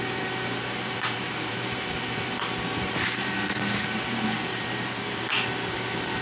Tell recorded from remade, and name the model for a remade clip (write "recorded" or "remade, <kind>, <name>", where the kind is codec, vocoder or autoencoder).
remade, vocoder, BigVGAN v2